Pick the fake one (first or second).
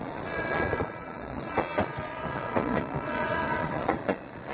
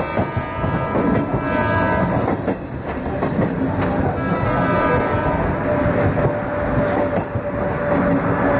first